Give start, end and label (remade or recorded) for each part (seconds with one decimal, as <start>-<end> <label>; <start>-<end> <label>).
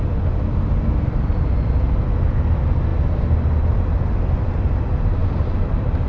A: 0.0-5.2 recorded; 5.2-6.1 remade